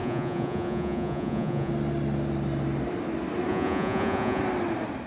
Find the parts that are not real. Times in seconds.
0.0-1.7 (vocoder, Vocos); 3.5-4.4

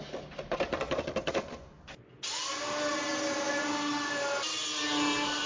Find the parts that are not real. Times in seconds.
none

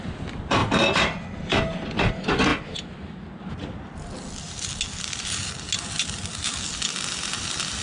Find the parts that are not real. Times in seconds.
none

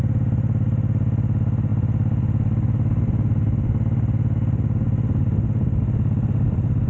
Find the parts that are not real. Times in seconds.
none

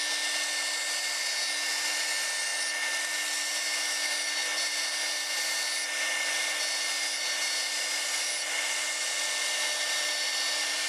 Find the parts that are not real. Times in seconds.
none

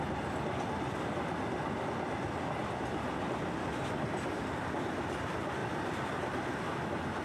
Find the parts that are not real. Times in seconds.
none

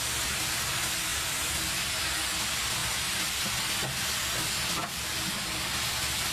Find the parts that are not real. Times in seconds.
2.8-3.4 (vocoder, BigVGAN v2)